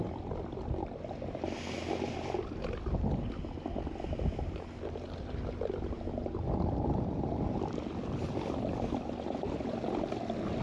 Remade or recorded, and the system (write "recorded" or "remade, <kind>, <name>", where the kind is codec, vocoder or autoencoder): recorded